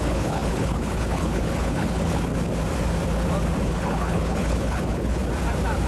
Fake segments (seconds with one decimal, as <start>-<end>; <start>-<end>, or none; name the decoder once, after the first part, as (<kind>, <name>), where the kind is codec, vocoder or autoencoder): 0.0-2.3 (codec, HILCodec); 3.6-5.2